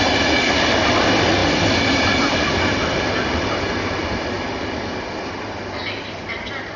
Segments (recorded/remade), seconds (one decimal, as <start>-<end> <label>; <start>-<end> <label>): 0.0-6.8 recorded

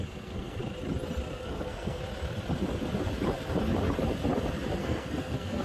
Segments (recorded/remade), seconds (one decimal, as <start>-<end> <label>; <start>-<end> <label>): 0.0-0.6 remade; 0.6-1.3 recorded; 1.3-2.0 remade; 2.0-4.8 recorded; 4.8-5.6 remade

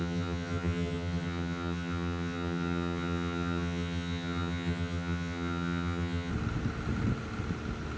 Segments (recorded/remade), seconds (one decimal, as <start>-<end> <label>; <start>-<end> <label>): 0.0-6.3 remade; 6.3-8.0 recorded

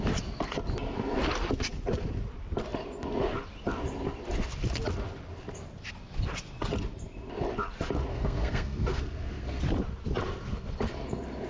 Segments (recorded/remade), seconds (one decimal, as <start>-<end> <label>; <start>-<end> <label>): 0.0-8.1 recorded; 8.1-9.6 remade; 9.6-11.5 recorded

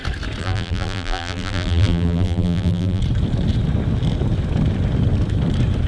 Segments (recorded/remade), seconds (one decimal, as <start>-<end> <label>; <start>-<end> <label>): 0.0-0.4 recorded; 0.4-3.0 remade; 3.0-5.9 recorded

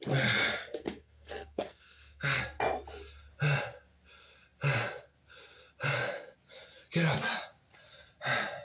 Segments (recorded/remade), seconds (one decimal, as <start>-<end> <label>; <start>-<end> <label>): 0.0-0.6 recorded; 0.6-2.4 remade; 2.4-8.6 recorded

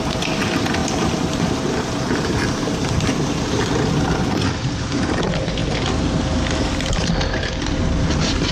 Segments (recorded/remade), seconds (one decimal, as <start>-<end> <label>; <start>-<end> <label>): 0.0-0.8 recorded; 0.8-4.2 remade; 4.2-8.5 recorded

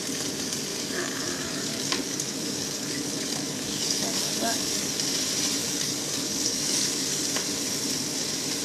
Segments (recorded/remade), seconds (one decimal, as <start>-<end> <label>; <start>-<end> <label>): 0.0-0.7 recorded; 0.7-4.9 remade; 4.9-5.6 recorded; 5.6-7.2 remade; 7.2-8.6 recorded